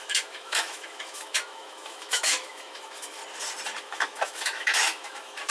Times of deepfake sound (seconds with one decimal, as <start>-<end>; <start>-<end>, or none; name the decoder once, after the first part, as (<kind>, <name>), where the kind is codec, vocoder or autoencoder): 0.0-3.2 (autoencoder, DAC-VAE); 3.8-5.5